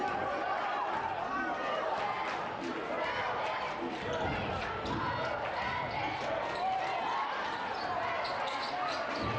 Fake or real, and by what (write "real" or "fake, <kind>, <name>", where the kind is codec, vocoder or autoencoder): real